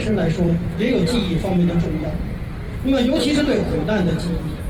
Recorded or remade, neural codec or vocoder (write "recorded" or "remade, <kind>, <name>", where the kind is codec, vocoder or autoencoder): remade, vocoder, BigVGAN v2